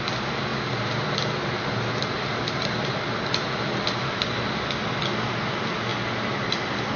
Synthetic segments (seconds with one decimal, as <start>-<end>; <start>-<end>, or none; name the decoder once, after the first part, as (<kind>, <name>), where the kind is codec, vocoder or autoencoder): none